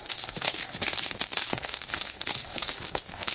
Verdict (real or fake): fake